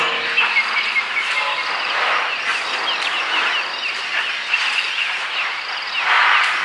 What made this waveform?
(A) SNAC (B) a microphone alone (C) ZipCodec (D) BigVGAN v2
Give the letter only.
B